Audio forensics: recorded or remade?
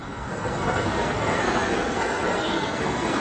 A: remade